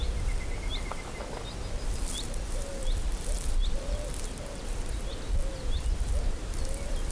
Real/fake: real